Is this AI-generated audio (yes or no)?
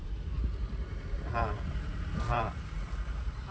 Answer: yes